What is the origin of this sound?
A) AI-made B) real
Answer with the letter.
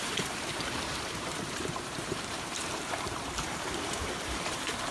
A